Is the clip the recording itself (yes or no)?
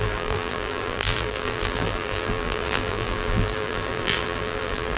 no